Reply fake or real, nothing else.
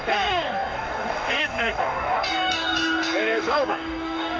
fake